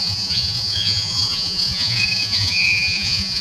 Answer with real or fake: fake